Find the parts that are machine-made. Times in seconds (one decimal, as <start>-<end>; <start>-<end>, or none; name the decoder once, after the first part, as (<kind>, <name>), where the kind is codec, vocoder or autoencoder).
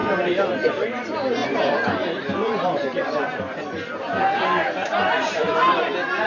none